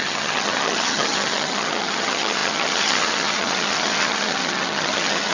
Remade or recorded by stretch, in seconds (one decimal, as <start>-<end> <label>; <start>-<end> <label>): 0.0-5.3 remade